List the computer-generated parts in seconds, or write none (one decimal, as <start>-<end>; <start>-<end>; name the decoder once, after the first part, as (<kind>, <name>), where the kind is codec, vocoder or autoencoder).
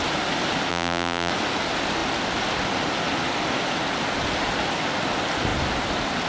0.7-1.3 (vocoder, BigVGAN v2)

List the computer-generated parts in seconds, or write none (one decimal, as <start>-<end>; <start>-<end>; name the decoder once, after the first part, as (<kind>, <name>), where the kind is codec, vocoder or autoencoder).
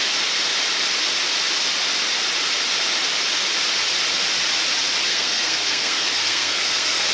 5.1-7.1 (codec, SNAC)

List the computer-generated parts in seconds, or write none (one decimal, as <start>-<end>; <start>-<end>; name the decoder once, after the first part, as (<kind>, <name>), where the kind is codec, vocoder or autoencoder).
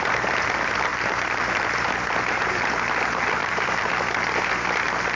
0.9-2.6 (vocoder, BigVGAN v2); 3.4-3.9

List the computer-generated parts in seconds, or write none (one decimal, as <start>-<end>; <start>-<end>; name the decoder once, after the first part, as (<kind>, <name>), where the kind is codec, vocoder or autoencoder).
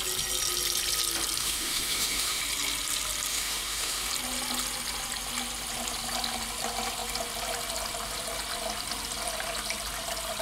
1.4-2.4 (autoencoder, DAC-VAE); 3.3-4.1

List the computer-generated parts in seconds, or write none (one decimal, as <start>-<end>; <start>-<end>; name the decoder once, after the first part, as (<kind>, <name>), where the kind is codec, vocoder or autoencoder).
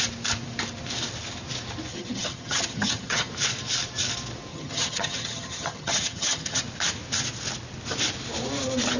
1.9-3.3 (vocoder, HiFi-GAN); 4.5-6.6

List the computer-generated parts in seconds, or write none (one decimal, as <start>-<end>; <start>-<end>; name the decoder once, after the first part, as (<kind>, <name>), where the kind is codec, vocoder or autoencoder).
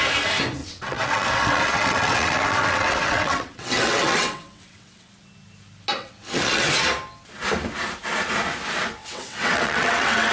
0.6-5.1 (vocoder, WaveNeXt); 5.9-6.7; 9.0-10.3